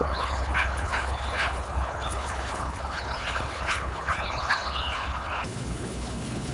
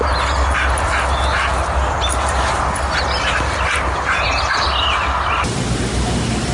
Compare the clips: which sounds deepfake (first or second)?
first